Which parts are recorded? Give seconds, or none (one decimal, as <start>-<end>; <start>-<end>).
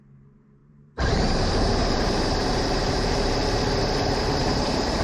0.0-0.6; 3.6-4.4